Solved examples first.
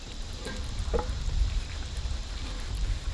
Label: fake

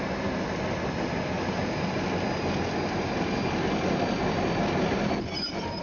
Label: real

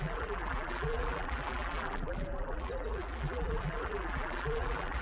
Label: fake